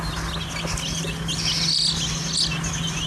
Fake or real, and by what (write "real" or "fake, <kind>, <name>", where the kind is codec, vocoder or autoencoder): real